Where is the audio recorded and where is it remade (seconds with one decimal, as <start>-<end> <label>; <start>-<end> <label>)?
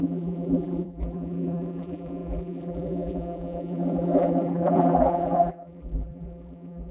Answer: 0.0-6.9 remade